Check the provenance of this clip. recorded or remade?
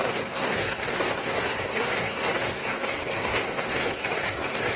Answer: remade